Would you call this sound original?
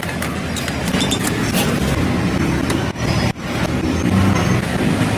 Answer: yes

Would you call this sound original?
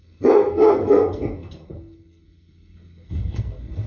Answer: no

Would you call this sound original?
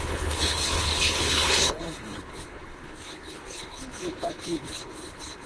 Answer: no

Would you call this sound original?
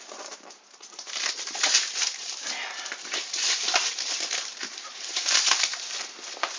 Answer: no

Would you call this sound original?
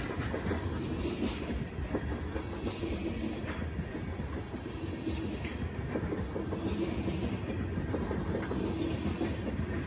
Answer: yes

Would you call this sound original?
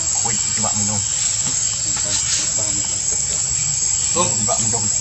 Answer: yes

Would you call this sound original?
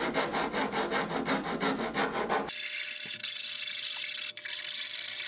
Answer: yes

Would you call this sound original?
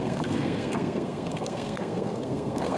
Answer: no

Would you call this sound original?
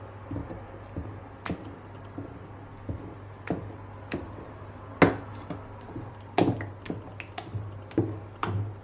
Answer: yes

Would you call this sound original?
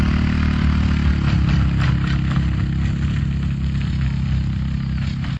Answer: yes